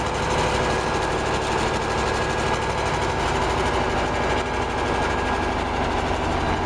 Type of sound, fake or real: real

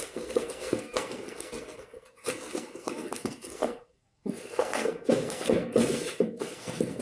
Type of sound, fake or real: fake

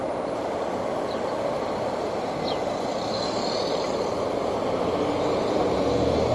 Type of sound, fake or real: real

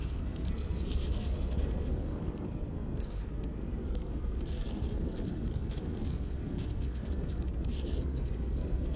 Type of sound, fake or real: fake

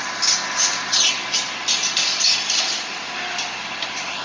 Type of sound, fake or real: real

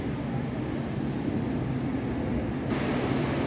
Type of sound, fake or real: real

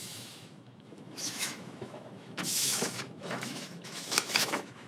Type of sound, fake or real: fake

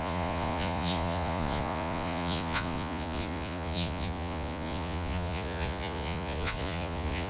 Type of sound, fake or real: fake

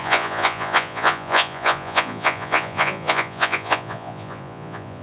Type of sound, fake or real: fake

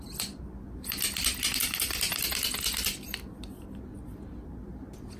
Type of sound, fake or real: real